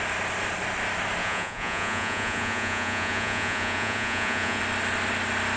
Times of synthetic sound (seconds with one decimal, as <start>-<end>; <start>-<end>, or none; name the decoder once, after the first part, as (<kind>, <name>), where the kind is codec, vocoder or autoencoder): 1.2-4.6 (vocoder, Vocos)